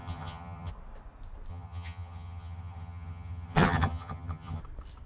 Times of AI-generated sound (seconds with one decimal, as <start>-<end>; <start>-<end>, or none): 0.0-0.7; 1.5-4.6